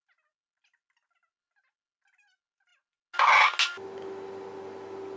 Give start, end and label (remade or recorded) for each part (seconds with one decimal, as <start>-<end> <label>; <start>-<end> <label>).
0.0-5.2 recorded